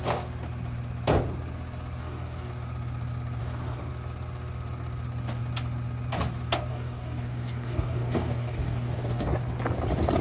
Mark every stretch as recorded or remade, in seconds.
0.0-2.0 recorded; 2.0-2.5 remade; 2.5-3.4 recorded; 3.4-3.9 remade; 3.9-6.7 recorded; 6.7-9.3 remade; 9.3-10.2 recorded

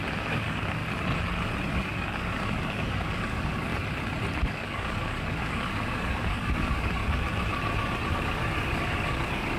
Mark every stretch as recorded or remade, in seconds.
0.0-0.8 remade; 0.8-1.7 recorded; 1.7-3.7 remade; 3.7-4.4 recorded; 4.4-7.0 remade; 7.0-8.1 recorded; 8.1-9.6 remade

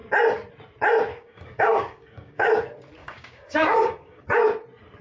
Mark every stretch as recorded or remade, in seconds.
0.0-1.1 recorded; 1.1-2.5 remade; 2.5-3.0 recorded; 3.0-4.2 remade; 4.2-5.0 recorded

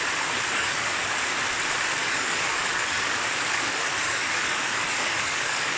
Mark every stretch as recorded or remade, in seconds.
0.0-0.5 recorded; 0.5-1.2 remade; 1.2-2.0 recorded; 2.0-5.8 remade

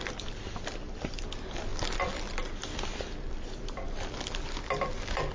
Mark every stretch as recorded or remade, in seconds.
0.0-5.3 recorded